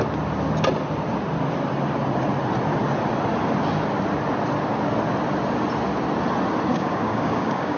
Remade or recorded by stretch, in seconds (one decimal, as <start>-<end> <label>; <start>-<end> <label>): 0.0-6.7 recorded; 6.7-7.8 remade